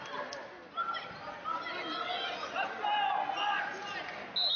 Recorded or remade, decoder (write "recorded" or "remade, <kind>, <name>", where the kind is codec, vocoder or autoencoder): recorded